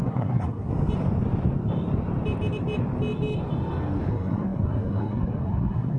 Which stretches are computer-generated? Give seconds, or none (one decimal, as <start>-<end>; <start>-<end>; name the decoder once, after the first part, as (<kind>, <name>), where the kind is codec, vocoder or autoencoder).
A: 0.0-0.7 (codec, SNAC); 4.1-6.0